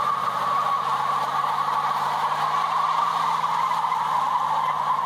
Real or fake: real